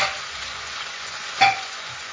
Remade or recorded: remade